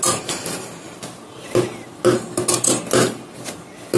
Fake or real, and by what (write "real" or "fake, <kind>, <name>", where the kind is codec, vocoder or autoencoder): real